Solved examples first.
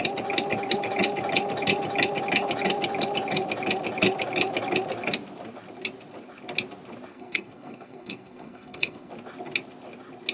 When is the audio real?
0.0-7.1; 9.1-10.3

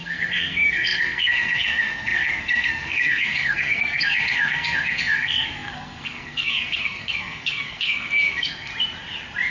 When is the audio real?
8.7-9.5